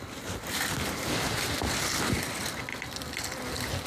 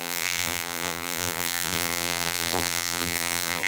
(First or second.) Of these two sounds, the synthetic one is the second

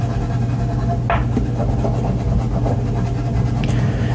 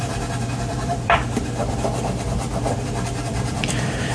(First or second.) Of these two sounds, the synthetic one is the second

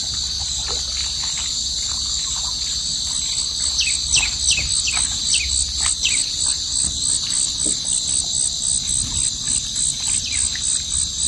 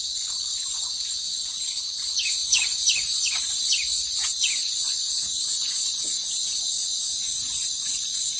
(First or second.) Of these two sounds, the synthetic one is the second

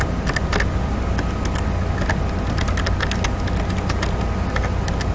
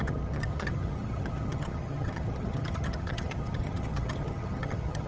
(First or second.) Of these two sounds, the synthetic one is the second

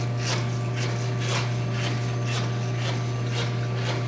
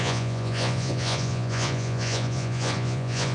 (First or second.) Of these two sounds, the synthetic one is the second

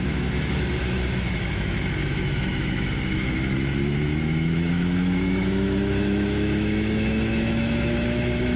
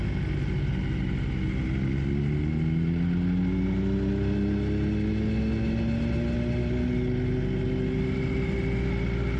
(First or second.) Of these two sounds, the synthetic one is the first